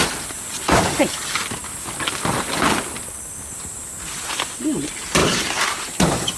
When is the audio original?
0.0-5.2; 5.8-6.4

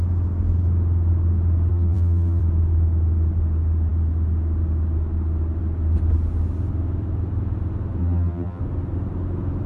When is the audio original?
0.0-1.7; 2.4-8.0; 8.6-9.7

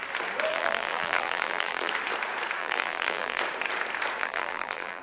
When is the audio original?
0.0-0.5; 1.9-2.6; 3.4-4.2

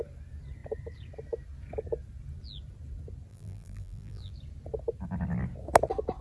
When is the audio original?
0.0-3.3; 4.3-6.2

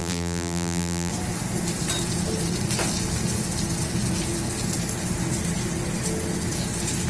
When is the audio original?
1.1-7.1

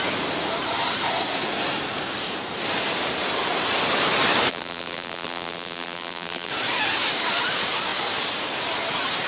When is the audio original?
0.0-4.5; 6.5-9.3